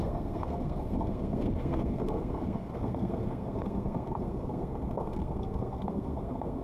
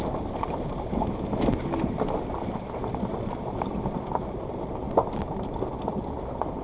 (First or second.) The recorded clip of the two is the second